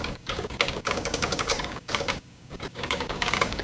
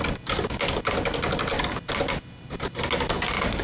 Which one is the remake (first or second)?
first